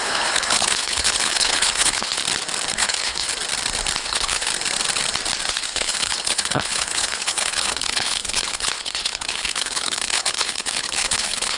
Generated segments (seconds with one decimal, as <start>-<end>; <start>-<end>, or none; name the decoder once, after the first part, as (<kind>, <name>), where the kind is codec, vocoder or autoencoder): 0.0-2.2 (codec, HILCodec); 2.7-3.3; 4.0-4.5; 5.5-11.6